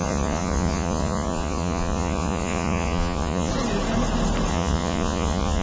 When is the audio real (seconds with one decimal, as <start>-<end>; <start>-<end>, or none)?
3.5-4.5